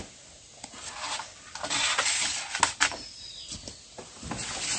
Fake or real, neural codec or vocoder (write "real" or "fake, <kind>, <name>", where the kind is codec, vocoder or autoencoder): real